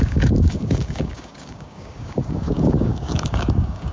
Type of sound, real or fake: fake